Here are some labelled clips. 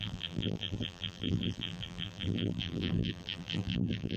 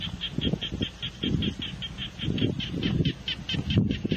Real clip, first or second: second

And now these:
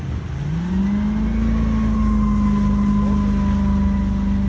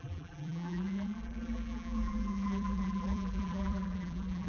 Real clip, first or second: first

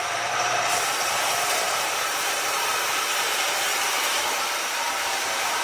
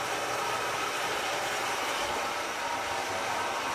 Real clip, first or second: second